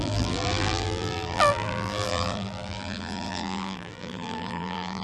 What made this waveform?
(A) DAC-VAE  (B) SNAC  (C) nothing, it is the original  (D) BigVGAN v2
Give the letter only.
D